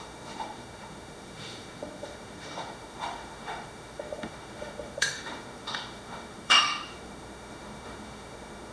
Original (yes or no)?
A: no